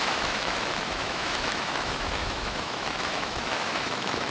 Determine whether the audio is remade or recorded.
remade